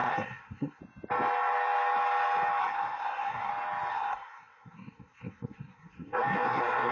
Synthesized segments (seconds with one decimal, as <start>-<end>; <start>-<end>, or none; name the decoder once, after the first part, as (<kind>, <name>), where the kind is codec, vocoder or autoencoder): 0.0-0.8 (codec, SNAC); 2.6-3.5; 3.9-6.9